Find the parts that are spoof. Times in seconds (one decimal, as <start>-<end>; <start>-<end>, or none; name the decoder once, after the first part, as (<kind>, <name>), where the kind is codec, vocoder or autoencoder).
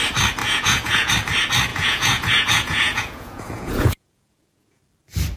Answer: 0.4-1.1 (vocoder, Vocos); 1.7-4.8